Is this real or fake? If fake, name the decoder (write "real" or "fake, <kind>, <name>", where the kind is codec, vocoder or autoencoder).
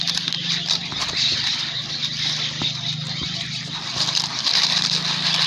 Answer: real